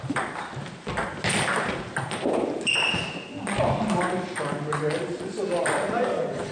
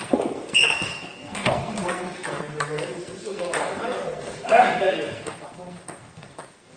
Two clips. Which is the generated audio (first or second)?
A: second